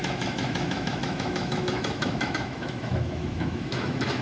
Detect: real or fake fake